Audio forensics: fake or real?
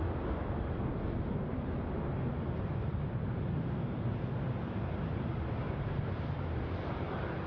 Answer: real